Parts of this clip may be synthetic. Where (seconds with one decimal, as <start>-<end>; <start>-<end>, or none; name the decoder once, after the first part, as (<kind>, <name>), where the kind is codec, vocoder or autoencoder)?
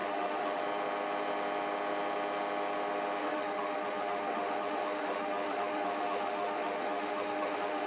0.0-0.6 (autoencoder, DAC-VAE); 3.2-7.9